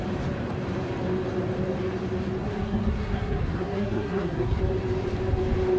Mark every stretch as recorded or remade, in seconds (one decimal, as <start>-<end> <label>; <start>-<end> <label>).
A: 0.0-2.4 recorded; 2.4-4.6 remade; 4.6-5.8 recorded